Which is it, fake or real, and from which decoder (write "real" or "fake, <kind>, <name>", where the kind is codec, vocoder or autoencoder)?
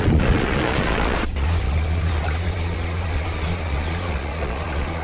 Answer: fake, vocoder, Vocos